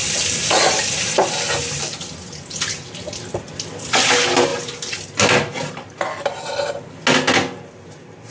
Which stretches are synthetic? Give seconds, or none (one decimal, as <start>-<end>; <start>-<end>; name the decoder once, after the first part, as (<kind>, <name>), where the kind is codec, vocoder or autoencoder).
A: none